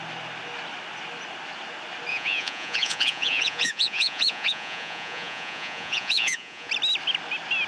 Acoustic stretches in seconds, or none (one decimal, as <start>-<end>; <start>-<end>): 0.0-2.1; 6.7-7.7

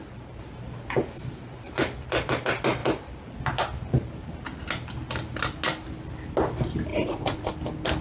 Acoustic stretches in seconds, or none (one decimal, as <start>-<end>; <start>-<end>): 0.0-6.9; 7.5-8.0

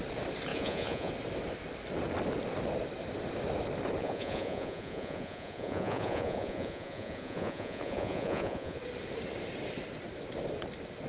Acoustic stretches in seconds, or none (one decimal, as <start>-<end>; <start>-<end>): 0.0-0.5; 1.1-4.0; 8.8-11.1